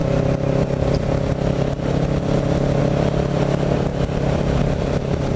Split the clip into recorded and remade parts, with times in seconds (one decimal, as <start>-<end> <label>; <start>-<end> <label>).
0.0-5.4 recorded